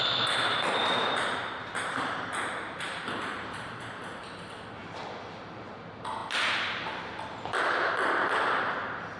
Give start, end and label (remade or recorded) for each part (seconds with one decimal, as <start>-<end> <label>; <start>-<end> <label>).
0.0-0.5 recorded; 0.5-3.8 remade; 3.8-9.2 recorded